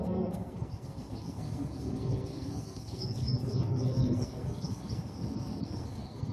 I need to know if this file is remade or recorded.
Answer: remade